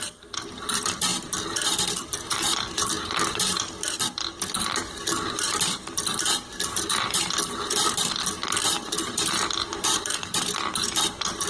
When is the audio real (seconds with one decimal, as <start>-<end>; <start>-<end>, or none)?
none